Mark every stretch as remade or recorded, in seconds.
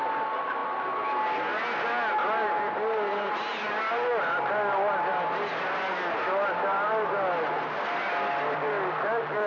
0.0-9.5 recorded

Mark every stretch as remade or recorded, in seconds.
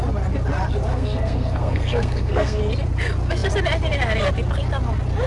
0.0-0.9 recorded; 0.9-2.6 remade; 2.6-5.3 recorded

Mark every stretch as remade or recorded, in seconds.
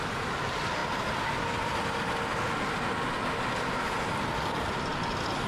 0.0-5.5 recorded